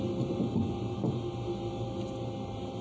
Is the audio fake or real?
real